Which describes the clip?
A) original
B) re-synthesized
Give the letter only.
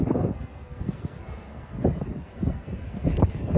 B